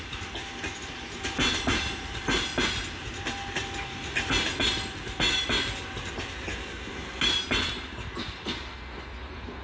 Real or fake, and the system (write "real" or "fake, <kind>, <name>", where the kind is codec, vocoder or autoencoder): real